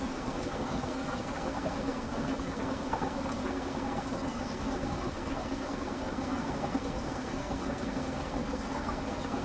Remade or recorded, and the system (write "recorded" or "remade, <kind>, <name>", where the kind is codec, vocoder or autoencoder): remade, codec, SNAC